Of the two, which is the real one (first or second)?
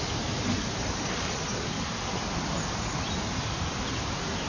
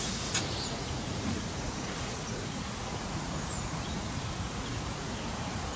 first